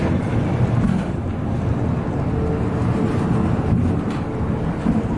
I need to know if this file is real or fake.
real